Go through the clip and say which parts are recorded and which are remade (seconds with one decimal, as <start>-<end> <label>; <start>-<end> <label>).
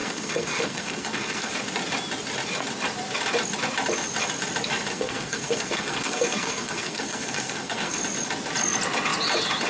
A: 0.0-1.5 remade; 1.5-4.9 recorded; 4.9-8.0 remade; 8.0-9.7 recorded